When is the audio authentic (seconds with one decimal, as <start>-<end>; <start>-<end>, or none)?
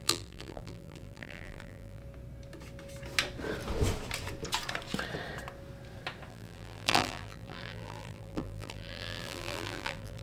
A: 2.0-6.3